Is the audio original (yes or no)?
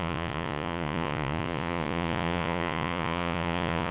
no